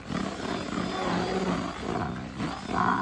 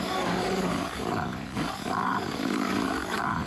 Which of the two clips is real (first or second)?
first